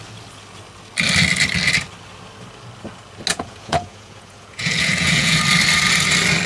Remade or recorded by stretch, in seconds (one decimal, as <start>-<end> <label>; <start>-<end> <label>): 0.0-3.3 recorded; 3.3-5.4 remade; 5.4-6.5 recorded